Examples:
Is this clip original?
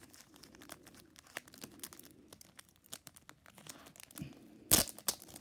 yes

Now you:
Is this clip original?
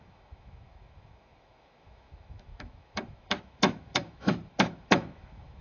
no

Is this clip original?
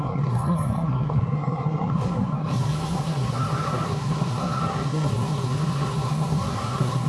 no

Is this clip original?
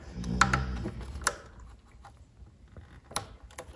yes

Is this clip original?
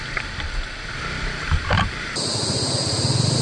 yes